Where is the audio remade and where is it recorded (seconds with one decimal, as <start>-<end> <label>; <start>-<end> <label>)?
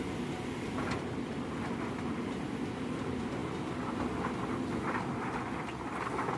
0.0-6.4 recorded